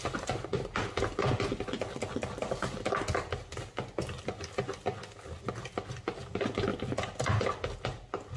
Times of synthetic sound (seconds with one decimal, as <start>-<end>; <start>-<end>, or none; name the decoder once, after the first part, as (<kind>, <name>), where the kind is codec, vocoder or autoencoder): none